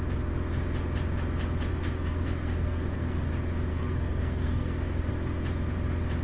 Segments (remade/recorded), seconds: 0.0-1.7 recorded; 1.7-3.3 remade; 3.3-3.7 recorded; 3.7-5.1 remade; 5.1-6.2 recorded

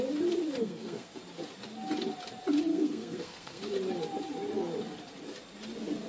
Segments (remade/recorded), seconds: 0.0-0.6 recorded; 0.6-1.2 remade; 1.2-2.7 recorded; 2.7-3.6 remade; 3.6-6.1 recorded

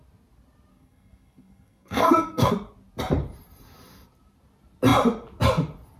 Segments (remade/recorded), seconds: 0.0-0.7 recorded; 0.7-2.5 remade; 2.5-6.0 recorded

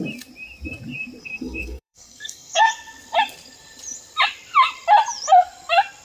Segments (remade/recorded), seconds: 0.0-1.2 recorded; 1.2-2.7 remade; 2.7-6.0 recorded

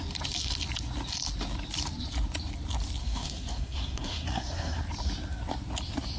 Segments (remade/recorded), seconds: 0.0-3.0 recorded; 3.0-4.8 remade; 4.8-6.2 recorded

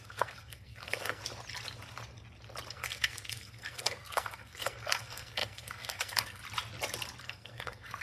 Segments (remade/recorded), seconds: 0.0-1.2 remade; 1.2-2.7 recorded; 2.7-6.4 remade; 6.4-7.2 recorded; 7.2-8.0 remade

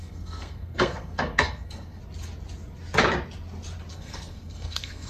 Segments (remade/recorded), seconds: 0.0-2.0 remade; 2.0-3.9 recorded; 3.9-5.1 remade

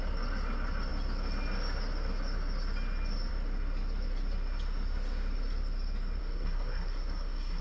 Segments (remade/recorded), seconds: 0.0-6.2 recorded; 6.2-7.6 remade